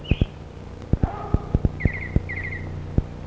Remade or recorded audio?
recorded